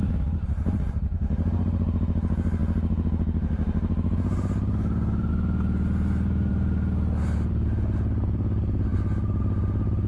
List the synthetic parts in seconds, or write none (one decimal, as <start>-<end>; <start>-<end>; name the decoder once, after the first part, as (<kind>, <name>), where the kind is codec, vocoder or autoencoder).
none

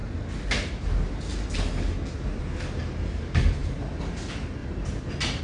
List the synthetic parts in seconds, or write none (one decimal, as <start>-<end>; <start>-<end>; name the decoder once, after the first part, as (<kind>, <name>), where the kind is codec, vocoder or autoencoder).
3.6-4.1 (vocoder, BigVGAN v2); 4.6-5.4

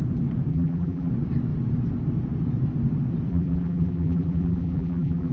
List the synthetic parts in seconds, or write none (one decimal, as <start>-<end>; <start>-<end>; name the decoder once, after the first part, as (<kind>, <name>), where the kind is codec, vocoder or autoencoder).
0.5-1.1 (vocoder, BigVGAN v2); 3.3-5.3

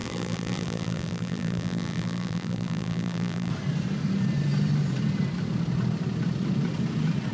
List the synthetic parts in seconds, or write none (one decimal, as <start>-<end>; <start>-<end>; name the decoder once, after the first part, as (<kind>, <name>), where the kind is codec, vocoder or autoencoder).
0.0-3.5 (vocoder, BigVGAN v2)

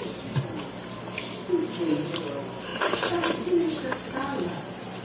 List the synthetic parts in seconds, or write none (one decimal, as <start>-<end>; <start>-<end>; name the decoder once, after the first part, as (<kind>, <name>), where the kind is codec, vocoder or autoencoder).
0.0-2.7 (vocoder, BigVGAN v2)

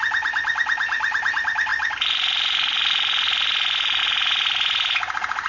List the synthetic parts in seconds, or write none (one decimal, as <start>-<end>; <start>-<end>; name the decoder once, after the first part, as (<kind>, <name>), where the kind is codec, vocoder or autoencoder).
0.0-5.5 (vocoder, BigVGAN v2)